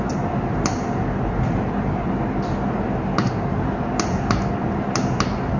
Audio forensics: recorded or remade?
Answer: recorded